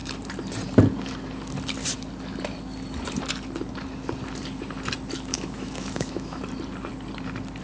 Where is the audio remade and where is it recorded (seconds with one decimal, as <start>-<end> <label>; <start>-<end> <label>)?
0.0-5.3 recorded; 5.3-6.4 remade; 6.4-7.6 recorded